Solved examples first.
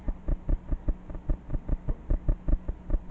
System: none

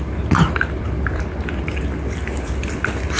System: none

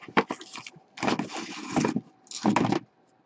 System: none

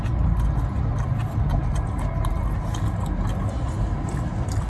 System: none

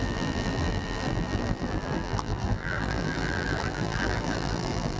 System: vocoder, BigVGAN v2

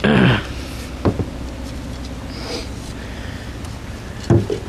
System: none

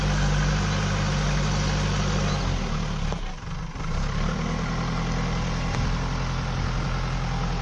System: none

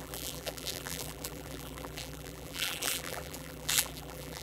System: vocoder, BigVGAN v2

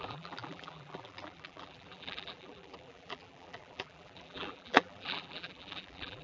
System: vocoder, BigVGAN v2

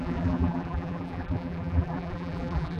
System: vocoder, BigVGAN v2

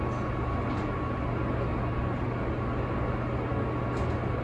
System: none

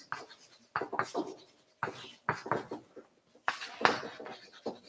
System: none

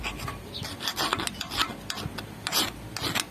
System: none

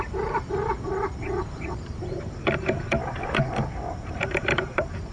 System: vocoder, BigVGAN v2